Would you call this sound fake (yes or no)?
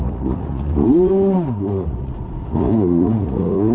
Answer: yes